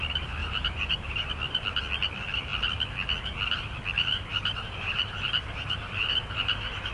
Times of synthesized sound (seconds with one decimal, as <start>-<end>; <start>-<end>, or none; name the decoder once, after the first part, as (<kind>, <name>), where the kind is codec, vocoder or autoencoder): 0.4-1.3 (vocoder, BigVGAN v2); 4.3-6.9